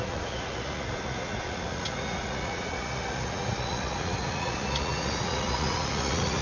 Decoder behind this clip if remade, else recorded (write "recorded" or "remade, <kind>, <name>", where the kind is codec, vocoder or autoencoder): remade, vocoder, Vocos